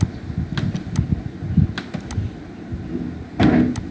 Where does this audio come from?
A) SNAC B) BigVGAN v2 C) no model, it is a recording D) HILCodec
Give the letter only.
C